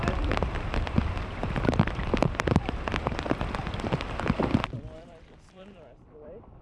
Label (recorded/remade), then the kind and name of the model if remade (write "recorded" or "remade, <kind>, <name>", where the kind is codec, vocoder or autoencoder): remade, vocoder, BigVGAN v2